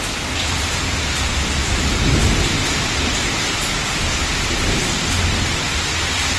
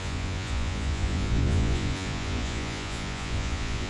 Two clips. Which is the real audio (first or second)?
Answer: first